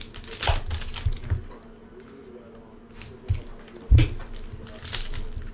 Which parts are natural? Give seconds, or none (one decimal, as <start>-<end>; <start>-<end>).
0.0-5.5

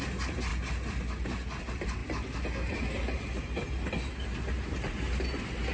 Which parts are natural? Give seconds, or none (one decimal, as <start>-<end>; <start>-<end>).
0.0-5.7